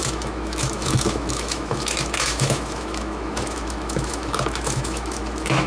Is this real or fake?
fake